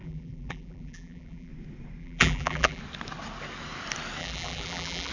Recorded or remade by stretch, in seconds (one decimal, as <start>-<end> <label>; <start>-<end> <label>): 0.0-1.5 remade; 1.5-2.0 recorded; 2.0-2.8 remade; 2.8-4.2 recorded; 4.2-5.1 remade